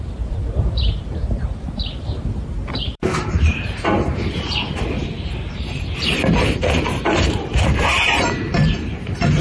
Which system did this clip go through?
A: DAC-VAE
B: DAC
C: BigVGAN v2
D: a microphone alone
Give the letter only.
C